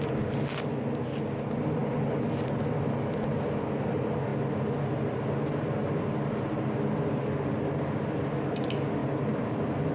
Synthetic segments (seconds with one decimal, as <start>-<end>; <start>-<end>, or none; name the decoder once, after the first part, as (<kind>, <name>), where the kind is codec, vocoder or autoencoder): none